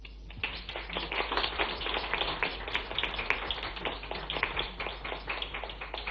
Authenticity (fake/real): real